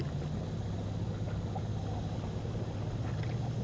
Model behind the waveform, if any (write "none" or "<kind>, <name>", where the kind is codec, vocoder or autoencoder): none